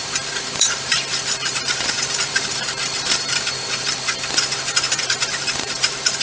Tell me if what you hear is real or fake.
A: fake